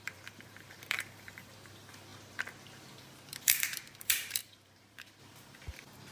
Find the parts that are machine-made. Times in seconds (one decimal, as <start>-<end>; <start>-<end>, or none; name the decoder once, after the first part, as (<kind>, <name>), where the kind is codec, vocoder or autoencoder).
0.0-2.1 (vocoder, BigVGAN v2); 3.0-6.1

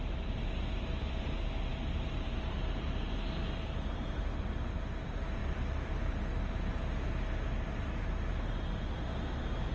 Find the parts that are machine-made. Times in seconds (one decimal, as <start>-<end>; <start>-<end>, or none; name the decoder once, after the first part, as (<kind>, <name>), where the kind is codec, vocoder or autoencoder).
1.7-2.9 (vocoder, BigVGAN v2); 5.4-6.1

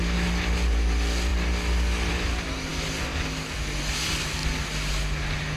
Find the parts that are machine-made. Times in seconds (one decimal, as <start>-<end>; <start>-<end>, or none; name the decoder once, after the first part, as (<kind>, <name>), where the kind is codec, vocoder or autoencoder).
none

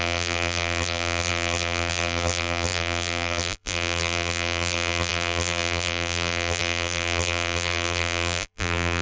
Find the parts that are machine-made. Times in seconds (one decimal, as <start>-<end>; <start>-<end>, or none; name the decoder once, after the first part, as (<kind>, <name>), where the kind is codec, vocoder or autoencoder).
0.0-9.0 (vocoder, BigVGAN v2)

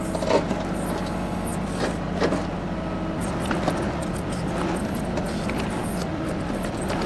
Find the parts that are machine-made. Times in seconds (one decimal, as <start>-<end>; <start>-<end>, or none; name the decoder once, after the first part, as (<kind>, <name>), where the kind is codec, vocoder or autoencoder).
none

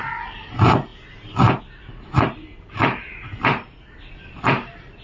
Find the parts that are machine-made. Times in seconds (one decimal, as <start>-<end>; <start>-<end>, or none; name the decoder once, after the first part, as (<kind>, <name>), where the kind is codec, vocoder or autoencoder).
none

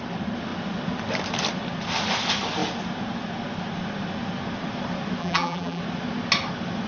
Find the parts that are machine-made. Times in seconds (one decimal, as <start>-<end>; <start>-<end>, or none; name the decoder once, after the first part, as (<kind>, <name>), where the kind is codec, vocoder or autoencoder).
5.2-5.8 (vocoder, BigVGAN v2)